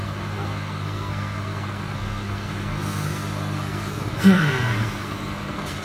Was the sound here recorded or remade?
remade